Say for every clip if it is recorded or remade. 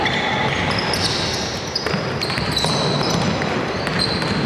recorded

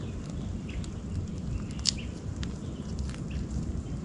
recorded